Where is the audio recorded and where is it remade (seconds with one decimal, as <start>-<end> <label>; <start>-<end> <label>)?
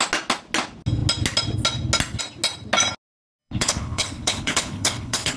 0.0-3.4 recorded; 3.4-5.4 remade